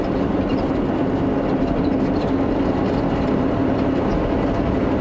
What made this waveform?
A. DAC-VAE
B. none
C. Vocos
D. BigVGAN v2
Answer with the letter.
B